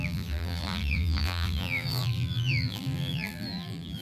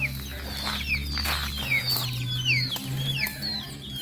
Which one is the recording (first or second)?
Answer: second